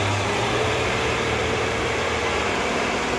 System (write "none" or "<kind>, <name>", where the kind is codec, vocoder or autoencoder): vocoder, BigVGAN v2